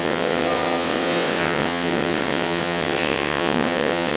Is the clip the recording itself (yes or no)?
no